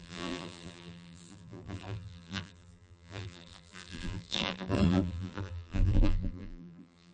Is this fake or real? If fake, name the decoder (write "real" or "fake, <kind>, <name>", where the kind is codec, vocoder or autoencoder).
fake, vocoder, BigVGAN v2